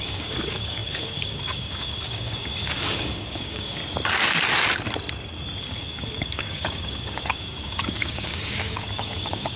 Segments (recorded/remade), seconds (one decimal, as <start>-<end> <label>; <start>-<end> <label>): 0.0-3.8 remade; 3.8-5.6 recorded; 5.6-9.6 remade